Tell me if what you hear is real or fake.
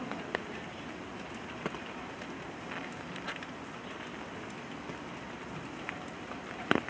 real